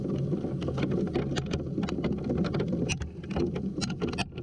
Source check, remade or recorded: recorded